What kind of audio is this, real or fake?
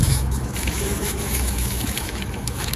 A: fake